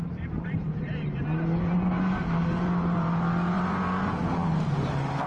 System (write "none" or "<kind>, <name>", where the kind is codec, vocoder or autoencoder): vocoder, BigVGAN v2